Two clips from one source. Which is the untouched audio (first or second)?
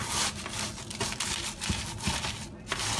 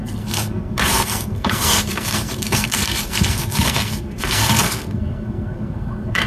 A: first